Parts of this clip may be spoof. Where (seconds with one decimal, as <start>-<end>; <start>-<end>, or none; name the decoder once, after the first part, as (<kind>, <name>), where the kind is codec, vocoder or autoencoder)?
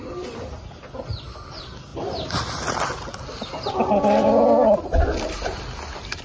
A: none